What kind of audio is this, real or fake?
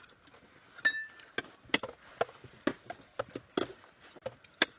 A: real